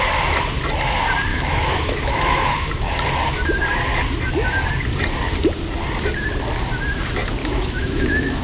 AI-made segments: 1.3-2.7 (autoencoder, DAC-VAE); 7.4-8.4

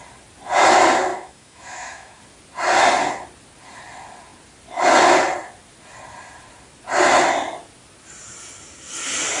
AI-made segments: 1.1-2.2 (autoencoder, DAC-VAE)

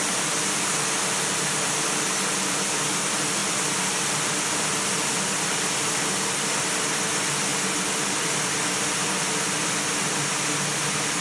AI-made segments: none

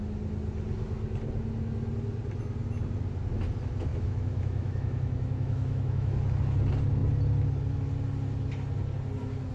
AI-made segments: 3.9-6.3 (autoencoder, DAC-VAE)

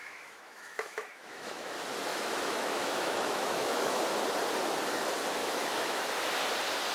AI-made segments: 0.0-1.7 (autoencoder, DAC-VAE); 2.1-4.0; 5.4-6.1